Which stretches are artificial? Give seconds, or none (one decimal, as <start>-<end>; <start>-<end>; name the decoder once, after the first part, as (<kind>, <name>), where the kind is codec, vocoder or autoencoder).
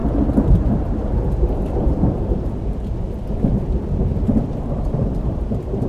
none